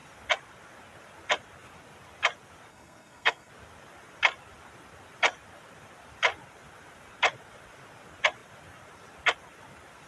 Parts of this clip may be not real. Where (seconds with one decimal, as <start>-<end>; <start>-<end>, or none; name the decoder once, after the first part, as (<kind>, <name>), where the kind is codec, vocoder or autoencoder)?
2.7-3.5 (codec, SNAC)